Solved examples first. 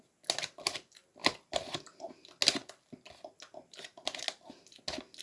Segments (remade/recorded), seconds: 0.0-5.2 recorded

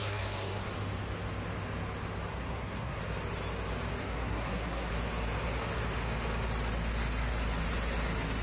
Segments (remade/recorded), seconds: 0.0-0.7 remade; 0.7-2.3 recorded; 2.3-3.0 remade; 3.0-4.0 recorded; 4.0-4.9 remade; 4.9-8.4 recorded

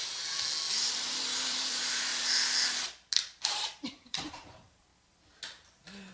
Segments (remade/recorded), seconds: 0.0-0.8 recorded; 0.8-2.1 remade; 2.1-3.5 recorded; 3.5-4.9 remade; 4.9-6.1 recorded

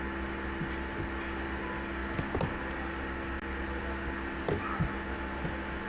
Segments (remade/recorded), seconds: 0.0-5.9 recorded

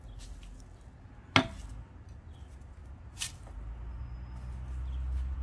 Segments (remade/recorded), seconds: 0.0-5.4 recorded

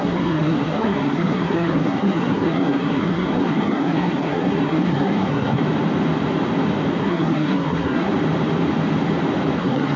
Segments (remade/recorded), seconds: 0.0-5.6 remade; 5.6-7.0 recorded; 7.0-8.1 remade; 8.1-9.6 recorded; 9.6-10.0 remade

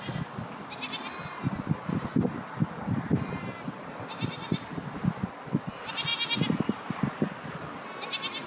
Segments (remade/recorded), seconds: 0.0-8.5 recorded

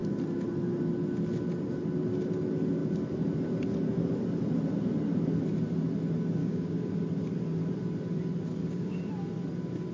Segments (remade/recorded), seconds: 0.0-6.4 recorded; 6.4-6.9 remade; 6.9-8.6 recorded; 8.6-9.1 remade; 9.1-9.9 recorded